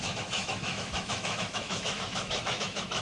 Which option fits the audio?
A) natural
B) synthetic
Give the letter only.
B